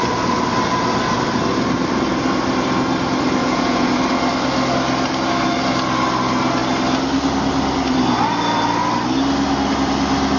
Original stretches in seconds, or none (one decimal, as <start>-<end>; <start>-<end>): 0.0-3.4; 4.0-10.4